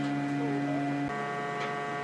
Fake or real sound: real